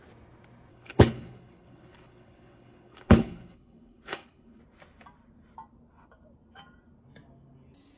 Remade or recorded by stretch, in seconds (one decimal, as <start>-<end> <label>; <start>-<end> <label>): 0.0-0.7 recorded; 0.7-4.6 remade; 4.6-8.0 recorded